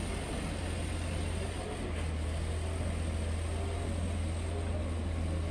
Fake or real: real